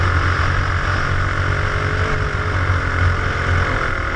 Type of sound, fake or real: real